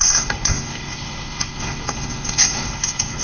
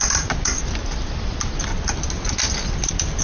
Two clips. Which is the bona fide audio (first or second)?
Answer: second